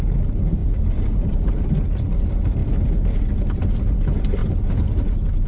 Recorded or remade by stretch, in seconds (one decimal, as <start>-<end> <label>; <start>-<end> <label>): 0.0-0.6 recorded; 0.6-1.5 remade; 1.5-4.4 recorded; 4.4-5.5 remade